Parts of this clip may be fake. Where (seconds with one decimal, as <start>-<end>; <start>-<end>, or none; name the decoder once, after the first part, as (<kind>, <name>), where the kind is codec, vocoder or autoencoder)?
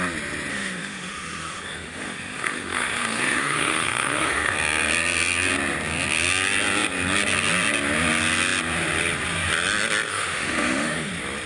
0.5-4.5 (autoencoder, DAC-VAE); 10.1-11.1